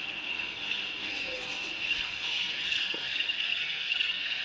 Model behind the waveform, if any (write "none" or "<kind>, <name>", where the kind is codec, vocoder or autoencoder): codec, SNAC